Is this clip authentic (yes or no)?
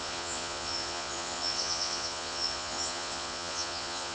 no